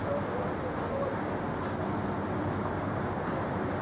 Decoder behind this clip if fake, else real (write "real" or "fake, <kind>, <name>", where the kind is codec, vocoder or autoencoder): real